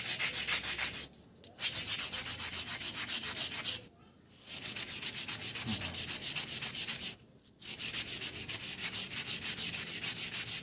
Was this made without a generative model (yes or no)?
yes